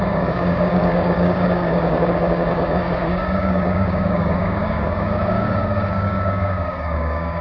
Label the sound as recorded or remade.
remade